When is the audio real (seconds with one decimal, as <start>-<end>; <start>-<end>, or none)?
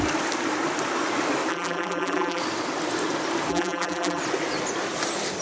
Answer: 0.0-1.5; 2.4-3.5; 4.2-5.4